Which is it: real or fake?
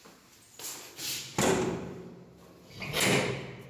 fake